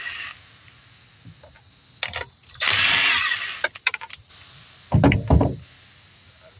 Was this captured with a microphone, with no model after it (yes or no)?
yes